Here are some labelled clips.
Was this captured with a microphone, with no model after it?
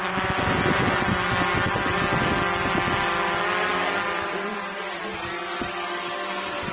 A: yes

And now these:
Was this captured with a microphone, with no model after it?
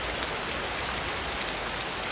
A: yes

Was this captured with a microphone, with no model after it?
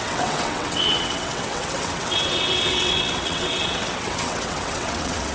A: no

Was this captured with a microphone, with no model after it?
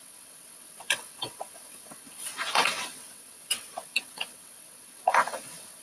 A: no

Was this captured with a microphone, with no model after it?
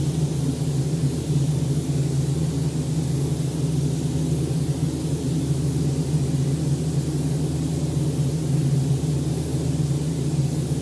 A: yes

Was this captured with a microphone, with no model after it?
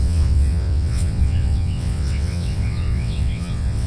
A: no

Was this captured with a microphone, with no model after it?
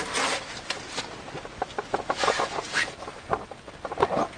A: yes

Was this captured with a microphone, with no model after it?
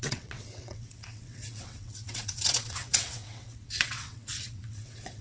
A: no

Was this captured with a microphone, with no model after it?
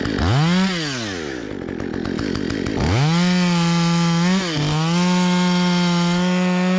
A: yes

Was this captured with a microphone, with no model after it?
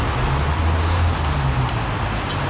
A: yes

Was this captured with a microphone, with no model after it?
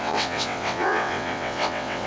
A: no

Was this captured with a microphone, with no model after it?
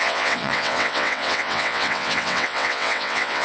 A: no